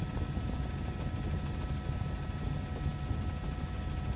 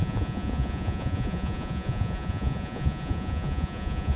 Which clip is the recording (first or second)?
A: first